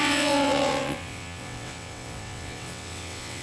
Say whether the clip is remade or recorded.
remade